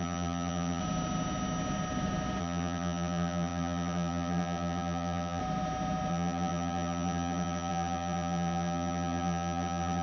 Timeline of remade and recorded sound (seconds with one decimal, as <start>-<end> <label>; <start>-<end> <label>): 0.0-0.8 remade; 0.8-2.4 recorded; 2.4-5.4 remade; 5.4-6.1 recorded; 6.1-10.0 remade